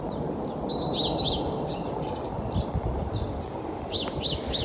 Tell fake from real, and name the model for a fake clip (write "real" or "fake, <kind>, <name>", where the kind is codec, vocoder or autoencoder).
real